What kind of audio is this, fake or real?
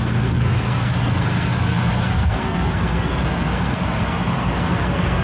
fake